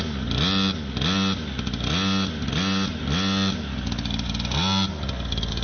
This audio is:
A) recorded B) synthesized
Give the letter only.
A